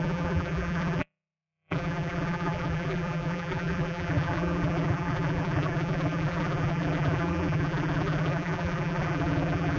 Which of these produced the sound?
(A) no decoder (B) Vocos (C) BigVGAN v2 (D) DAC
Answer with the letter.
C